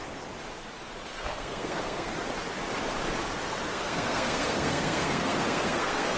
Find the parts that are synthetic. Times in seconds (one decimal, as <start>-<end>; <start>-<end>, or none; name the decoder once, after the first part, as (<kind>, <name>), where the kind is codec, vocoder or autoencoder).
1.1-2.1 (codec, SNAC); 3.7-6.2